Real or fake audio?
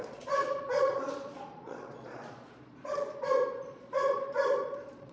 fake